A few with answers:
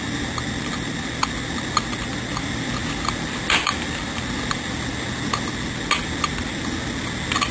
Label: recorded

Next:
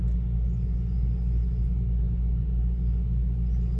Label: recorded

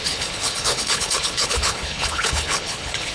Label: remade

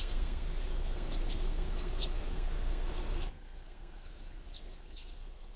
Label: remade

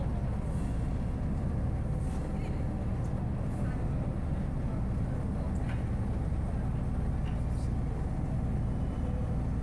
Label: recorded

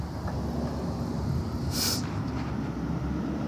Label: remade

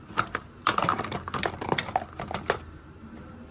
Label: recorded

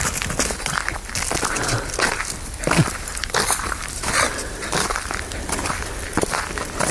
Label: remade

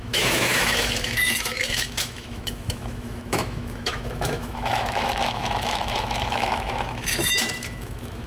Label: remade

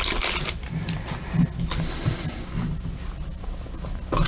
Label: recorded